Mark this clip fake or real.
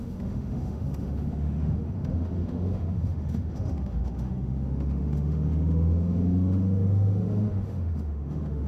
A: fake